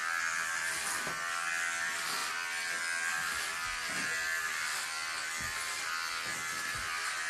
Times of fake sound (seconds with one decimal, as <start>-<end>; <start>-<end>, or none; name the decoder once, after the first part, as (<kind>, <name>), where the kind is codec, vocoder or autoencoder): none